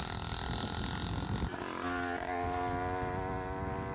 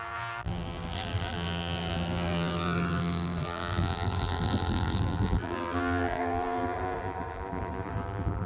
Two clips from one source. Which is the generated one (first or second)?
second